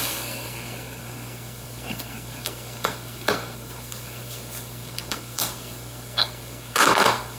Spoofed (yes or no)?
yes